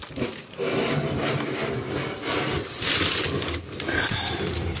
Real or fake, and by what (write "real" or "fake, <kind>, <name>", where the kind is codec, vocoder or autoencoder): fake, vocoder, BigVGAN v2